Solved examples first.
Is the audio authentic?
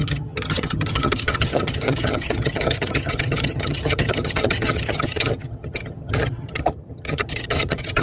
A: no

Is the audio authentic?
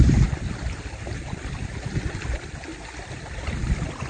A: yes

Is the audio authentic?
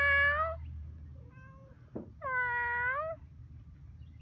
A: yes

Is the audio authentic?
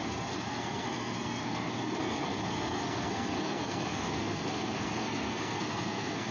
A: no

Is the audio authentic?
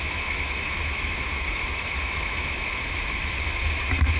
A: no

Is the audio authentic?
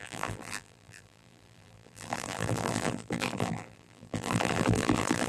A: no